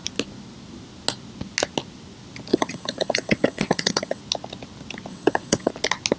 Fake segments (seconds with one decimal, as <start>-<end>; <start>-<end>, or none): 2.5-4.2; 5.1-5.7